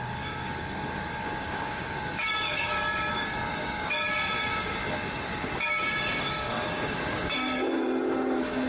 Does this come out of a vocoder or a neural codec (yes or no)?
yes